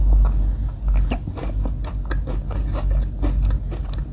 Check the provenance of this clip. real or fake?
real